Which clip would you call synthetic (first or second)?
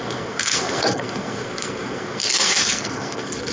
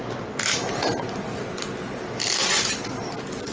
first